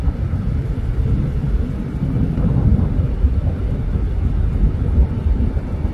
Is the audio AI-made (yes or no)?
no